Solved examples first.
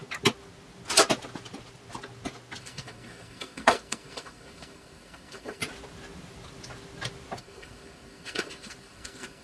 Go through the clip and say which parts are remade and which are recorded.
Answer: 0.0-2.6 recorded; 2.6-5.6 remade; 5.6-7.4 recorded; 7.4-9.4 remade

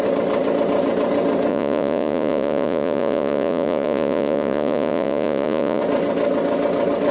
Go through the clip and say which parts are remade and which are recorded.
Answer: 0.0-1.5 recorded; 1.5-5.8 remade; 5.8-7.1 recorded

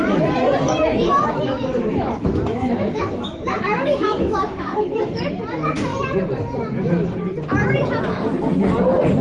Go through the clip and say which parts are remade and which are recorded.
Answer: 0.0-0.6 recorded; 0.6-5.2 remade; 5.2-9.2 recorded